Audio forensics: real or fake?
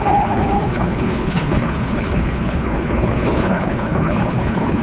fake